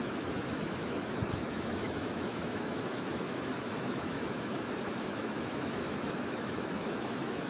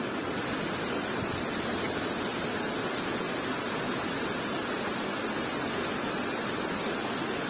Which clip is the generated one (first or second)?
first